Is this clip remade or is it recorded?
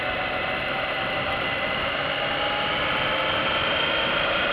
recorded